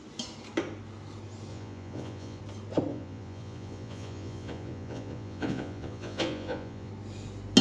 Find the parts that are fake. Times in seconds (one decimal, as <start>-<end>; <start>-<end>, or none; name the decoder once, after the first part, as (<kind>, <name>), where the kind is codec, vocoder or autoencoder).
1.5-2.4 (vocoder, Vocos); 2.9-6.9